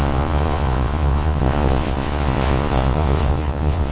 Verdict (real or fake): fake